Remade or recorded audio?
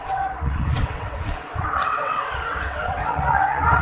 remade